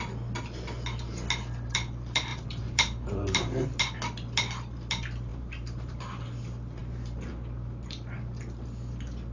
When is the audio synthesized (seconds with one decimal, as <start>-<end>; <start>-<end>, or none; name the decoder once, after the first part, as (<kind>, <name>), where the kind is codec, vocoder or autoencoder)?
2.3-3.8 (vocoder, BigVGAN v2); 5.3-6.0